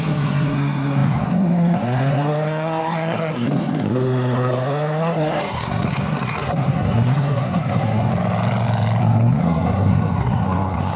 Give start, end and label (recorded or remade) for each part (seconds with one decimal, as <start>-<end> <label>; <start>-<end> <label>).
0.0-8.1 remade; 8.1-9.0 recorded; 9.0-11.0 remade